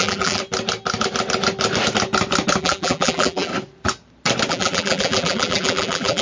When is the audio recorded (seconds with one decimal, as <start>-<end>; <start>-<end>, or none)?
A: 0.4-2.6; 3.5-4.5